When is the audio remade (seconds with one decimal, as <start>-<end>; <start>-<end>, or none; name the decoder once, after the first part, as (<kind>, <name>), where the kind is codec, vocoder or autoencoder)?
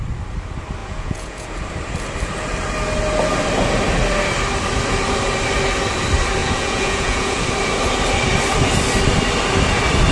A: 0.8-1.6 (vocoder, Vocos); 6.4-7.4